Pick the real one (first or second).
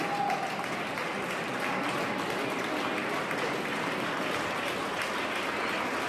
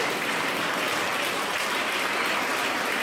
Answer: first